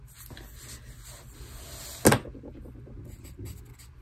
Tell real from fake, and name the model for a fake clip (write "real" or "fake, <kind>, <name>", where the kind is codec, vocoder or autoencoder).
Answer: real